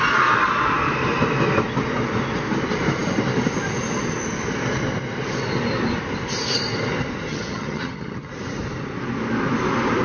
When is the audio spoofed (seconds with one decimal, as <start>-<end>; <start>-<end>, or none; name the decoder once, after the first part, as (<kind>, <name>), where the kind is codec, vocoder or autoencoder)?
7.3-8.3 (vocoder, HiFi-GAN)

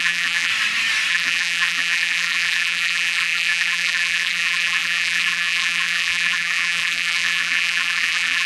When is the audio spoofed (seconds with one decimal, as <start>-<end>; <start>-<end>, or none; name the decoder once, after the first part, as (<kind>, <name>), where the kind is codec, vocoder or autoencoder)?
0.0-0.5 (vocoder, BigVGAN v2); 1.1-8.5

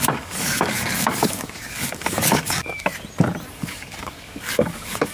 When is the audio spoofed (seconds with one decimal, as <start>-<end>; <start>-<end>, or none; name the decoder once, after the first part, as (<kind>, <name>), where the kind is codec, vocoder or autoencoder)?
0.0-2.9 (codec, DAC); 3.5-5.1

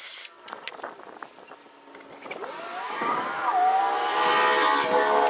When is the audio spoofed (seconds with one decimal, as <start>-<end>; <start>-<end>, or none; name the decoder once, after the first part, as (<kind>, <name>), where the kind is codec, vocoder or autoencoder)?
2.7-3.8 (codec, DAC)

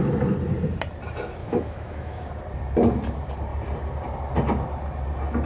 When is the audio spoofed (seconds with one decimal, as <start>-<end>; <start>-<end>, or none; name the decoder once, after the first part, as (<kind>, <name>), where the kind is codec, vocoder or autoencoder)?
1.4-2.3 (autoencoder, DAC-VAE)

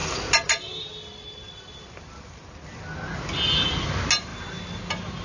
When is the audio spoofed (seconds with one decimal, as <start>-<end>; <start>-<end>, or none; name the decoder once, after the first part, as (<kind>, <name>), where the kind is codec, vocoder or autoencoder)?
none

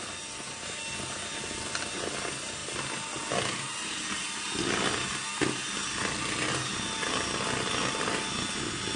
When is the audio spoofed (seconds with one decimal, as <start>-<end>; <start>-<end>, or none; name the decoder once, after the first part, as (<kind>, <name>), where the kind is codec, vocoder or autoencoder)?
none

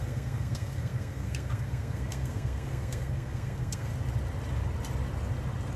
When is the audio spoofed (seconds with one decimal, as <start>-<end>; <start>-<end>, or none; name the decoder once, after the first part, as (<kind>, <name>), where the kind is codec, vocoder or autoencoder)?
0.0-3.9 (codec, SNAC)